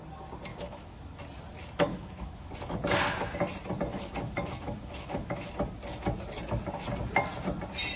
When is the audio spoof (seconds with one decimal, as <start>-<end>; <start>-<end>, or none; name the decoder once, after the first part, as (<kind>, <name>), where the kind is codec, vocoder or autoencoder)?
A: 0.5-1.2 (autoencoder, DAC-VAE); 1.9-2.5; 3.9-5.5